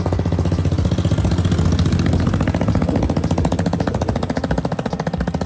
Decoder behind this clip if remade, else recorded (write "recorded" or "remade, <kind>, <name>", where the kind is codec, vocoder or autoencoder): recorded